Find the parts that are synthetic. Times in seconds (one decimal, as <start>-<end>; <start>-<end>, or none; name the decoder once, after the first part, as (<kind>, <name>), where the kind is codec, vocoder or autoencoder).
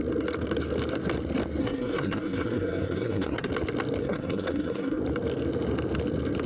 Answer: 1.6-3.5 (codec, SNAC); 4.0-5.0